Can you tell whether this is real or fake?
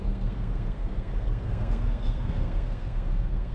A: fake